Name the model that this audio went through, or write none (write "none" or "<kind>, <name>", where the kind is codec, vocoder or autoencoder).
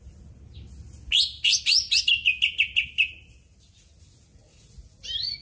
none